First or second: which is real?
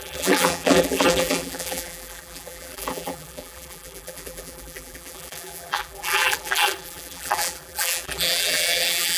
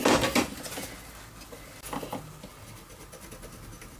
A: second